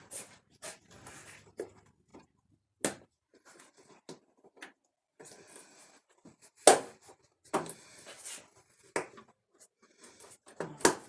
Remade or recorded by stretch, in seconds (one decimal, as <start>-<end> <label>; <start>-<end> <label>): 0.0-11.1 recorded